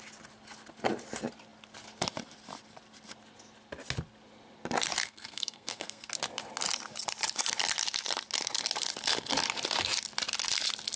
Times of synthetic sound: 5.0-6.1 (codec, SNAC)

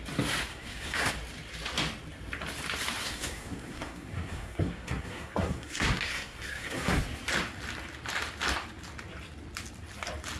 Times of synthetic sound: 0.5-1.1 (codec, SNAC); 3.0-7.0

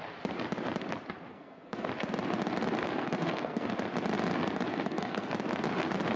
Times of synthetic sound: 1.3-1.9 (codec, SNAC); 2.8-3.7; 4.7-5.3

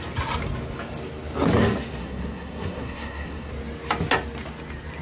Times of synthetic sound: 2.0-3.5 (codec, SNAC)

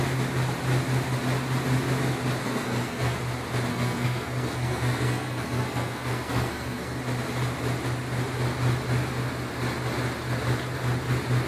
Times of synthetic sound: 2.4-3.2 (codec, SNAC); 3.7-7.0